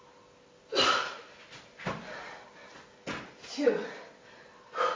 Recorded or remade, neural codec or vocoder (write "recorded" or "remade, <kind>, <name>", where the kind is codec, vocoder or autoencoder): recorded